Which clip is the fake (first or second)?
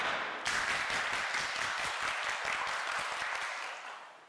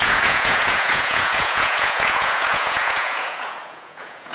second